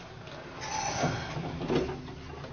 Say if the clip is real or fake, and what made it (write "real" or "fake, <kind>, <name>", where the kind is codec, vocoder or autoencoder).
real